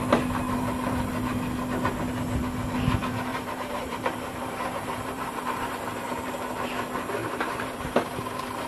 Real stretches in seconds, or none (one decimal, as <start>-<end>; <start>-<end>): 0.0-3.3; 6.3-7.2; 8.0-8.7